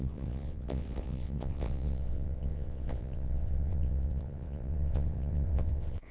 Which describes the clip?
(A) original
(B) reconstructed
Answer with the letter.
B